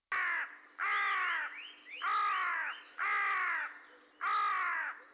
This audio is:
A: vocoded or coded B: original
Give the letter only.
B